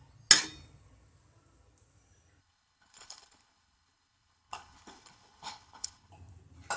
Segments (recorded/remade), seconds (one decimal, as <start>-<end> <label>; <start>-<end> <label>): 0.0-2.4 recorded; 2.4-6.1 remade; 6.1-6.8 recorded